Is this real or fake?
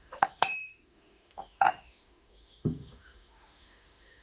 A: fake